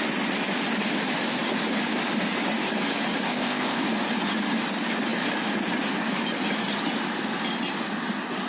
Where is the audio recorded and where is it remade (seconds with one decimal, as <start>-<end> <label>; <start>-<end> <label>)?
0.0-3.3 recorded; 3.3-3.8 remade; 3.8-8.5 recorded